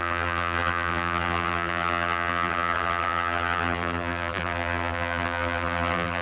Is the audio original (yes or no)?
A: no